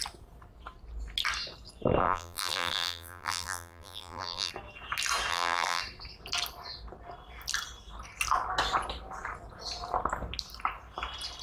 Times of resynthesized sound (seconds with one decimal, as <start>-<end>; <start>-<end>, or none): 2.0-4.5; 5.3-5.8